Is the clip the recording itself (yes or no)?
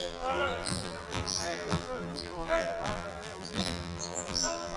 no